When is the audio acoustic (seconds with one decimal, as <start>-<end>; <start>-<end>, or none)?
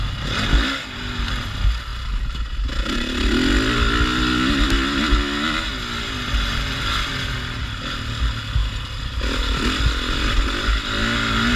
0.0-11.6